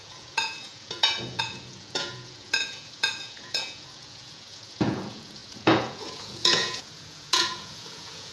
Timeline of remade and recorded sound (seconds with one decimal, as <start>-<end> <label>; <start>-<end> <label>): 0.0-8.3 remade